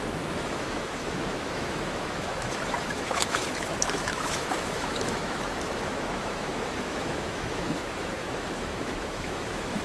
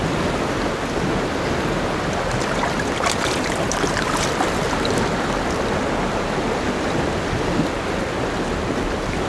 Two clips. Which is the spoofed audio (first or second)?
first